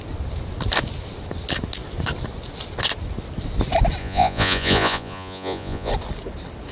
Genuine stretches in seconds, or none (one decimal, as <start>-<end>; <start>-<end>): 0.0-4.0; 5.9-6.7